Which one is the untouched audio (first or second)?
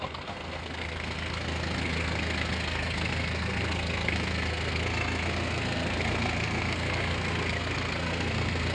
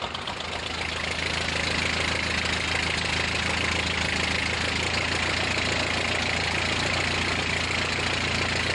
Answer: second